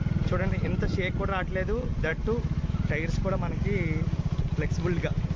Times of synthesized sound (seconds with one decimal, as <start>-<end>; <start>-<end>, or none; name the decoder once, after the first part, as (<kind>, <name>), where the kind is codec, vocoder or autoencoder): none